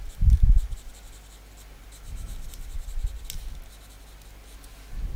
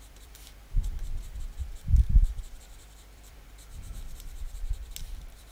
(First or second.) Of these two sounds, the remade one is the second